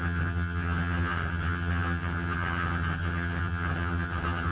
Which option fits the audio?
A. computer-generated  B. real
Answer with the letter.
A